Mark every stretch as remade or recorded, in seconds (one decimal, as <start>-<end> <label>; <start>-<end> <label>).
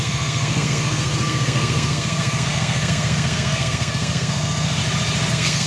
0.0-4.8 remade; 4.8-5.3 recorded; 5.3-5.7 remade